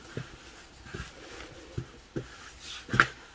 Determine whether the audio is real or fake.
real